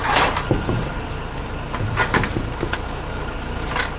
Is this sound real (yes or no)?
yes